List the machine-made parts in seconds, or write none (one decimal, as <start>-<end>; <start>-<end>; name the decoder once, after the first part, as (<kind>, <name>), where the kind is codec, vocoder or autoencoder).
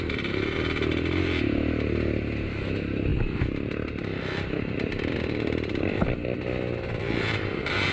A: none